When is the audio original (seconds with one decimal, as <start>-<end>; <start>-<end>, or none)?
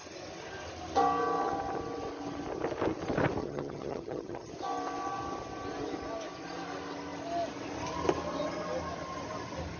0.0-3.4; 4.5-9.8